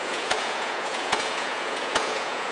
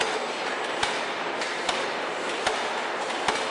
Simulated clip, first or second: first